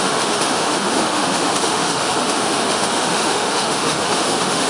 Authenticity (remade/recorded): remade